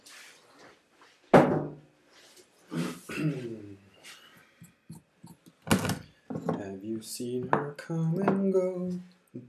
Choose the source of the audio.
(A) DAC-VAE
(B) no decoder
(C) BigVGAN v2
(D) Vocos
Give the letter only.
B